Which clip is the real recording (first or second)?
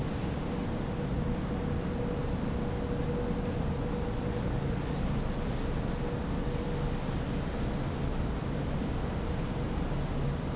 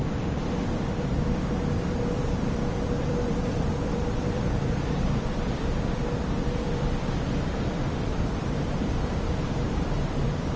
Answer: first